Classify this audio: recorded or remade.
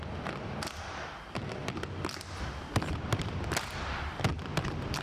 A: recorded